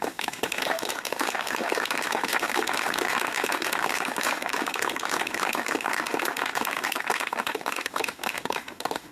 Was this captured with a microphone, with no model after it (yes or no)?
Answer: no